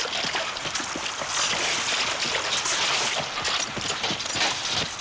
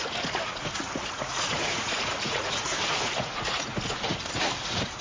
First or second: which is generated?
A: second